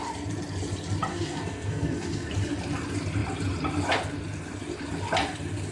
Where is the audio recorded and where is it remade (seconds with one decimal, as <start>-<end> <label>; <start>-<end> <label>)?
0.0-1.1 recorded; 1.1-2.3 remade; 2.3-5.7 recorded